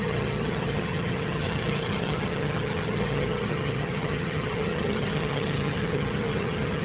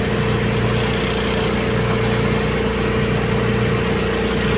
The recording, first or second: second